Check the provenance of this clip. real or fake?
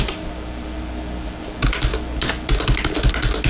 real